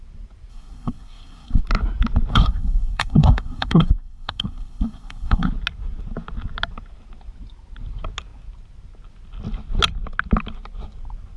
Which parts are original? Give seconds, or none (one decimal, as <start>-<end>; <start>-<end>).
0.0-0.5; 1.6-2.3; 5.5-11.4